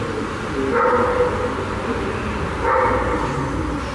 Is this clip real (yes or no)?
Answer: yes